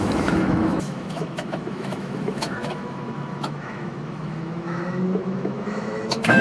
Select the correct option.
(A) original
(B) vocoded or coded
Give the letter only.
B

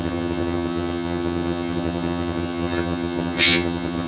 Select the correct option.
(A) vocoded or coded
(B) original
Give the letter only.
A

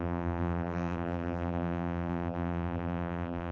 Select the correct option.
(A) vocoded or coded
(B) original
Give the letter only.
A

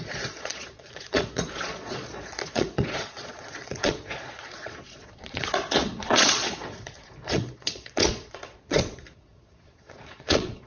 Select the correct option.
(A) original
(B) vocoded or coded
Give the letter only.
B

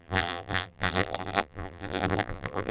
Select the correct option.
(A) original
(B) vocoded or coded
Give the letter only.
B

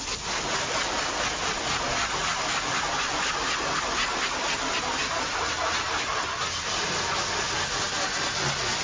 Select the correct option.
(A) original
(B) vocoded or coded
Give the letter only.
A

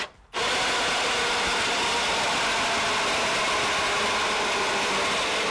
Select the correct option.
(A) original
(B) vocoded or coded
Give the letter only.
A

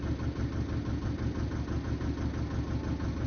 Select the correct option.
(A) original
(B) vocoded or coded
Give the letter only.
A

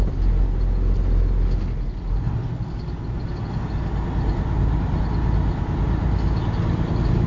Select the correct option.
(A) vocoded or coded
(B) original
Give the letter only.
B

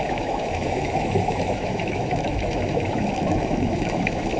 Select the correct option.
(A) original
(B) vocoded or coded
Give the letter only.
B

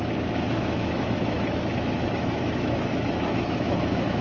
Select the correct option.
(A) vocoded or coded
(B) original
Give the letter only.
A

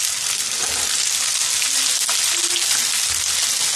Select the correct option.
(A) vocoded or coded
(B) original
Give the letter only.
B